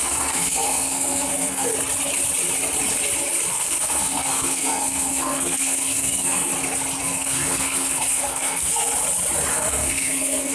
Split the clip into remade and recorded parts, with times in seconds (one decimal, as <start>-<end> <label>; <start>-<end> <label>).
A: 0.0-1.7 remade; 1.7-3.5 recorded; 3.5-6.5 remade; 6.5-7.0 recorded; 7.0-8.9 remade; 8.9-9.5 recorded; 9.5-10.5 remade